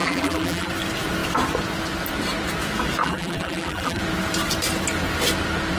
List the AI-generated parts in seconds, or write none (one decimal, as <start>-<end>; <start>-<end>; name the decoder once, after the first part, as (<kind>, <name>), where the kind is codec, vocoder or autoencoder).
0.0-0.7 (vocoder, BigVGAN v2); 3.0-4.0